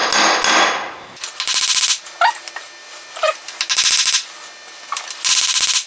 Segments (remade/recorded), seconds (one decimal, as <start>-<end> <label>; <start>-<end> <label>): 0.0-5.9 recorded